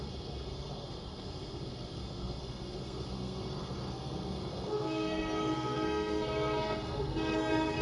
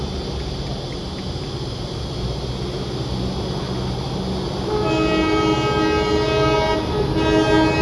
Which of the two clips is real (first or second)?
second